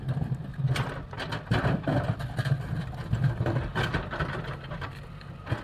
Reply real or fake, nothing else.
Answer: real